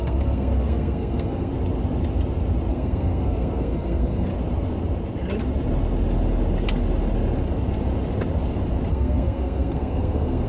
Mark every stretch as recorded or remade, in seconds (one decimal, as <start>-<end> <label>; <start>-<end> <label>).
0.0-1.5 remade; 1.5-2.7 recorded; 2.7-4.3 remade; 4.3-8.9 recorded; 8.9-10.5 remade